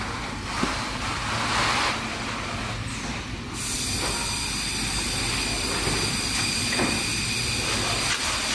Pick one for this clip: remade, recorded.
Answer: recorded